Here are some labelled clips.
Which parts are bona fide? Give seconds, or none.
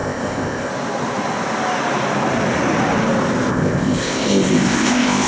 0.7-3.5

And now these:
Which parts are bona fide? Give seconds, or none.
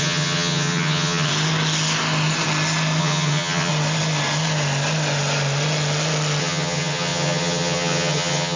1.3-3.0; 3.7-6.4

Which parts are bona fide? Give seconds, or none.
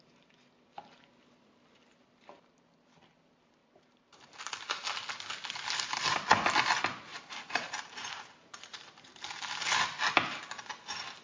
0.0-3.6; 4.8-7.1; 9.6-11.2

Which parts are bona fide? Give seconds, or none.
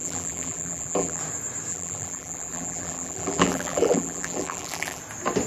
1.2-1.7; 5.0-5.5